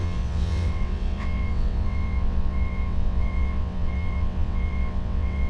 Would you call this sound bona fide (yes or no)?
no